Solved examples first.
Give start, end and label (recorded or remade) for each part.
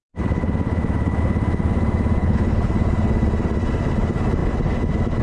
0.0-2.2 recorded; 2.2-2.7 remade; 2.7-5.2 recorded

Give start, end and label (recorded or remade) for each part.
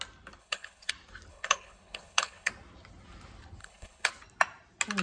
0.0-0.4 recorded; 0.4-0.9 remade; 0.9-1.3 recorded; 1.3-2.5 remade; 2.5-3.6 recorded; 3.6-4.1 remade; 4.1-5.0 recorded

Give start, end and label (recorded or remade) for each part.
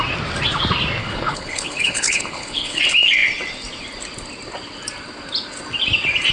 0.0-1.0 recorded; 1.0-2.8 remade; 2.8-6.3 recorded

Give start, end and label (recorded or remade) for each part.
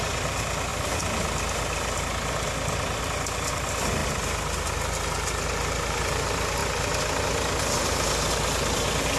0.0-9.2 recorded